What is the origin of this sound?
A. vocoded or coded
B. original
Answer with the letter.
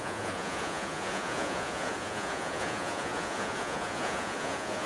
A